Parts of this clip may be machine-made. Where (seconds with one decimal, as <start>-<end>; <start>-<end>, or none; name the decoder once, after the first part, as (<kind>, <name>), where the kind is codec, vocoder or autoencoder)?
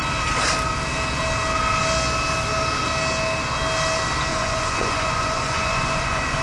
4.3-6.4 (vocoder, Vocos)